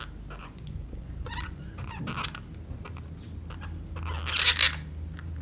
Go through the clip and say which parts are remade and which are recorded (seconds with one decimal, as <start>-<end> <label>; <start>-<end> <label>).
0.0-0.4 recorded; 0.4-2.0 remade; 2.0-5.4 recorded